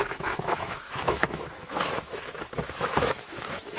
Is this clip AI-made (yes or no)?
yes